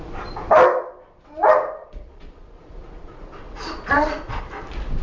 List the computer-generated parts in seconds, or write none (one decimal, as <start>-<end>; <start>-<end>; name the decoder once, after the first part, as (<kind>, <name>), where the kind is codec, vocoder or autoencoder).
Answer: 1.8-4.4 (vocoder, Vocos)